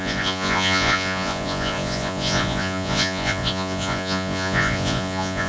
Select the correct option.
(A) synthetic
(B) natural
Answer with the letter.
A